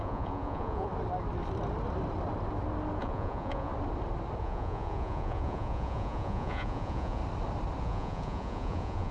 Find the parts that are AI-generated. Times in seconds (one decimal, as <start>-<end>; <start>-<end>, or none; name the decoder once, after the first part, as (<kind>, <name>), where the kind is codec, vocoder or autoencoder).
0.0-0.9 (vocoder, Vocos); 3.0-3.7; 4.4-7.2; 7.8-9.1